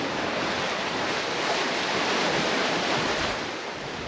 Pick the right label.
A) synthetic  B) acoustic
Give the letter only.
B